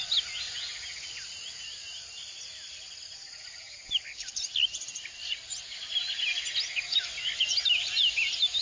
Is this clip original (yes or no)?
yes